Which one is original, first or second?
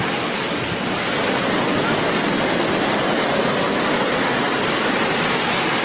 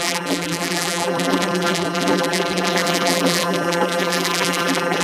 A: first